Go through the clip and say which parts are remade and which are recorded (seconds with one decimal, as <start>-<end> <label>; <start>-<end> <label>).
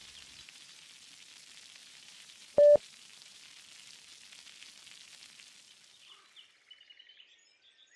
0.0-0.9 remade; 0.9-1.8 recorded; 1.8-3.6 remade; 3.6-8.0 recorded